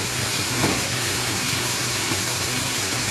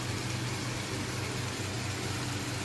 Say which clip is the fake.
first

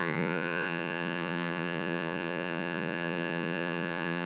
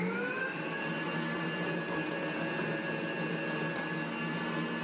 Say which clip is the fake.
first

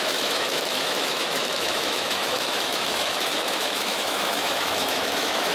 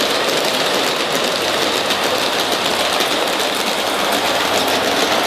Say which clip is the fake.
first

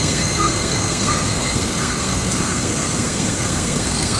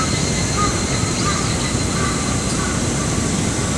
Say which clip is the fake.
first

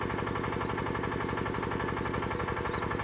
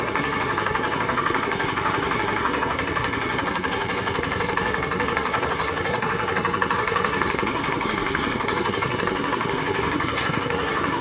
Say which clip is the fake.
second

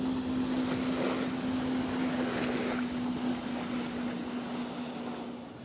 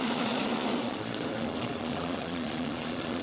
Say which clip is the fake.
second